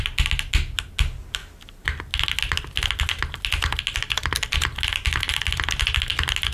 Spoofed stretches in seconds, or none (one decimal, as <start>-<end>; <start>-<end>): none